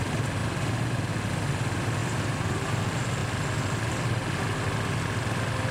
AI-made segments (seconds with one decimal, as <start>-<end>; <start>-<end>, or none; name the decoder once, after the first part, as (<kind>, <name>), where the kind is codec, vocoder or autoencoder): 0.4-1.1 (vocoder, BigVGAN v2); 2.0-2.8